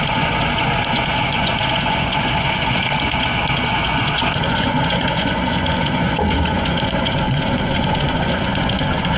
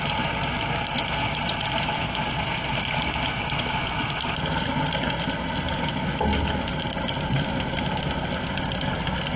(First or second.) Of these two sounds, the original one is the second